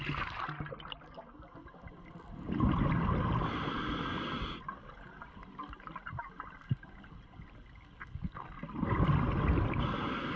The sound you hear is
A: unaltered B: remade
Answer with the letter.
A